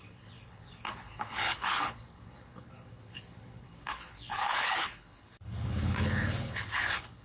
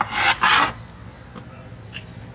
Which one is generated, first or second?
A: first